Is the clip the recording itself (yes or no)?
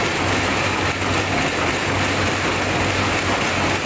yes